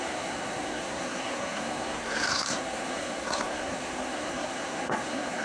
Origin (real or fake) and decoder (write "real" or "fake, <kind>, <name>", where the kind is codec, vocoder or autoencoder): fake, codec, SNAC